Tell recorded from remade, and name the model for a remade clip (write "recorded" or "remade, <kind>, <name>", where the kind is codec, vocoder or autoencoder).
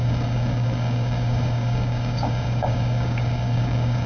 remade, codec, DAC